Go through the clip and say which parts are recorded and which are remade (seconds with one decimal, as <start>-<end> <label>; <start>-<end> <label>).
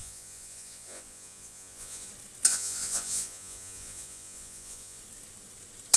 0.0-2.1 remade; 2.1-2.5 recorded; 2.5-5.0 remade; 5.0-6.0 recorded